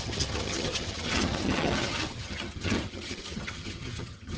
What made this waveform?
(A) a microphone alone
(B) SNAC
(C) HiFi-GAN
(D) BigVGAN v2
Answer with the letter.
C